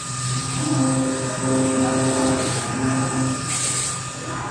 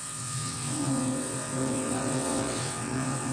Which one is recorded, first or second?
first